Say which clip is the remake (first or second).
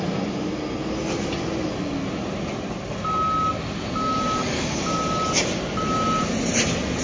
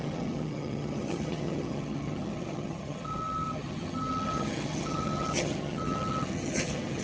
second